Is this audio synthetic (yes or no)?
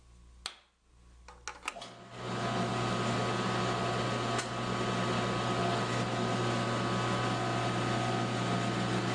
no